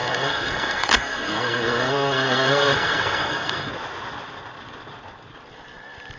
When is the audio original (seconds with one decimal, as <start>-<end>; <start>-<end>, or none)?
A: 3.7-6.2